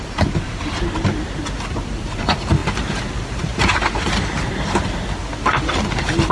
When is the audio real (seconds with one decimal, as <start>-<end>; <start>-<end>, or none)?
0.0-6.3

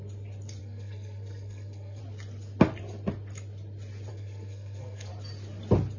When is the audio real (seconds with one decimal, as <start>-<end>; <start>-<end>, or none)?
0.0-0.6; 2.0-4.1; 5.1-6.0